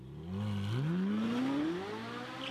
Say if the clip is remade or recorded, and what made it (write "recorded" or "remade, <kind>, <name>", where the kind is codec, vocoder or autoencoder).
recorded